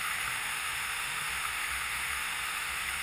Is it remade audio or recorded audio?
remade